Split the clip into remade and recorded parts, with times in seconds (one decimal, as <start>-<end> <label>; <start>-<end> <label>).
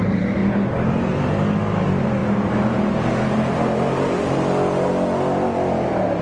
0.0-0.4 recorded; 0.4-1.3 remade; 1.3-2.2 recorded; 2.2-4.3 remade; 4.3-6.2 recorded